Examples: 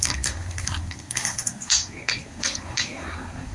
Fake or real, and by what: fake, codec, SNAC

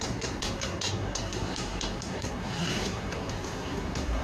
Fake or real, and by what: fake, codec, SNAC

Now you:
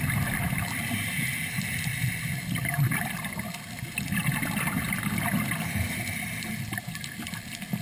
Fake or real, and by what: real